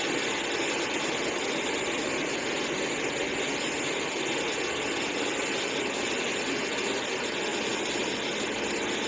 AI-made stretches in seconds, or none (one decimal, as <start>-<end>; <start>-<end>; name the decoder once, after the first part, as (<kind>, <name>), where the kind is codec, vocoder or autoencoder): none